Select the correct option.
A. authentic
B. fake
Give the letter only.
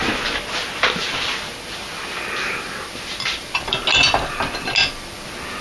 A